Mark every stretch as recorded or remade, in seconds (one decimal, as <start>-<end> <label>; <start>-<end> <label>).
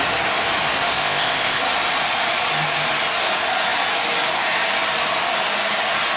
0.0-1.0 recorded; 1.0-1.6 remade; 1.6-6.2 recorded